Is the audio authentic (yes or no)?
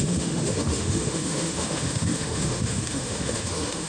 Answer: no